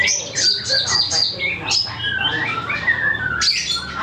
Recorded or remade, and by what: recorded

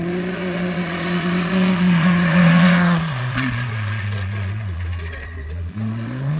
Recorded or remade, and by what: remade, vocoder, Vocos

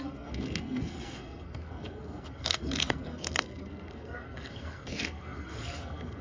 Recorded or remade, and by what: remade, codec, SNAC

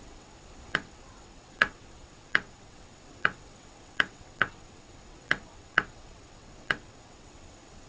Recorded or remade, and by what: remade, vocoder, WaveNeXt